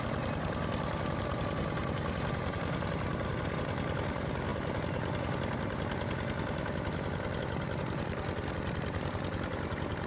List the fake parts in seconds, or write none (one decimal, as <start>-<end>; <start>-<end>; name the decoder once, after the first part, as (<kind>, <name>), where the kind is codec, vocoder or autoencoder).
none